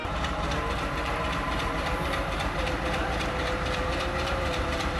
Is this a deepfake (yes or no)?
yes